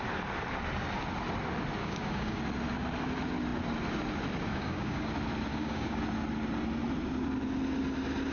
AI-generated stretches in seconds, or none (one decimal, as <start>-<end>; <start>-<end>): 1.8-2.4; 4.5-5.1; 5.5-6.0